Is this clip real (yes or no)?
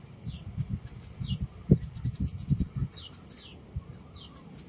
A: yes